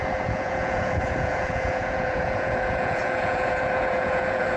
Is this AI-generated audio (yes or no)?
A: yes